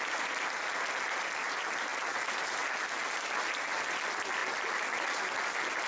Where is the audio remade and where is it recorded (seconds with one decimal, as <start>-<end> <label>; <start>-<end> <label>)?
0.0-5.9 recorded